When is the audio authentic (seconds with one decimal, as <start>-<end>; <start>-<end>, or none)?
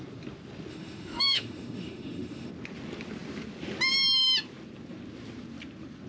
0.0-0.7; 2.5-6.1